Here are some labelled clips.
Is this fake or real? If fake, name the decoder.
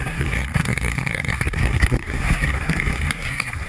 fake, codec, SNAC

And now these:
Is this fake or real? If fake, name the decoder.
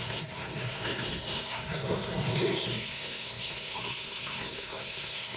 fake, codec, SNAC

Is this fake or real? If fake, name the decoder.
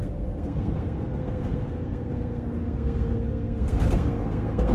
fake, codec, SNAC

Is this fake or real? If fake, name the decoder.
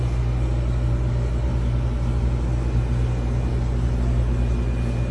real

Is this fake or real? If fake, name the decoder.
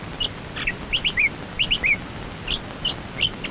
real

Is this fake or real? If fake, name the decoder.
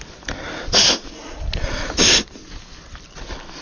real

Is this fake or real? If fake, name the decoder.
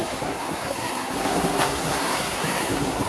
fake, codec, SNAC